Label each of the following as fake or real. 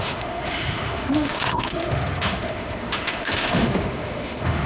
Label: fake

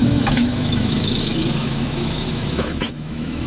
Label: fake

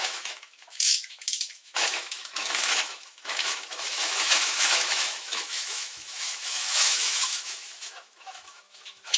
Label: fake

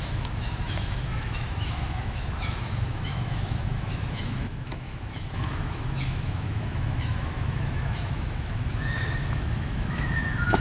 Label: fake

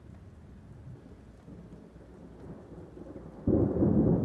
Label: real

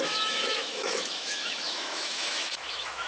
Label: fake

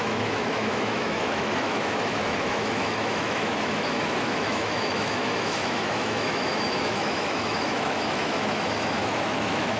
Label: fake